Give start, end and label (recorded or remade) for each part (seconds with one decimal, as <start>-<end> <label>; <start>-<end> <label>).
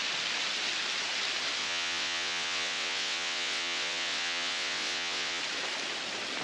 0.0-1.6 recorded; 1.6-5.4 remade; 5.4-6.4 recorded